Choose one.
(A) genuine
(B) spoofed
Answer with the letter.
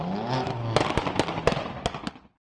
A